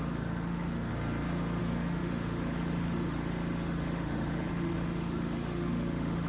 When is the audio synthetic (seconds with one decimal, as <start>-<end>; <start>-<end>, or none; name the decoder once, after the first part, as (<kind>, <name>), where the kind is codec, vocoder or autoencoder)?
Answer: 0.0-0.9 (autoencoder, DAC-VAE); 1.6-6.3